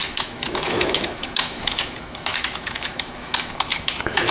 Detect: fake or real fake